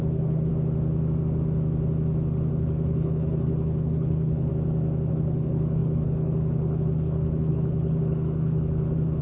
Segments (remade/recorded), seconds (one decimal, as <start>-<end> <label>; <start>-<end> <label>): 0.0-0.5 remade; 0.5-2.5 recorded; 2.5-4.5 remade; 4.5-5.1 recorded; 5.1-9.2 remade